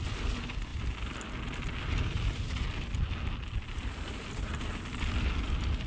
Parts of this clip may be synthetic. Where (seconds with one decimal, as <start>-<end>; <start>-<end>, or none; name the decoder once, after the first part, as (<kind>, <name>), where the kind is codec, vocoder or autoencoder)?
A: none